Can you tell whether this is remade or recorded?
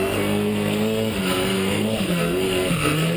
remade